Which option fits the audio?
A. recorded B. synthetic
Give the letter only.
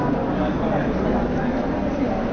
A